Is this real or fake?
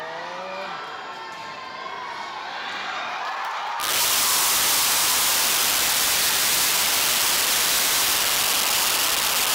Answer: real